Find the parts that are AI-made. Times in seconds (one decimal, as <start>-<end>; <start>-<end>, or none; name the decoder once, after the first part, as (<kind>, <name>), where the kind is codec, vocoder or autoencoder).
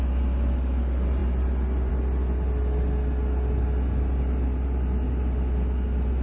none